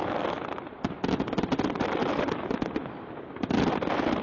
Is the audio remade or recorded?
recorded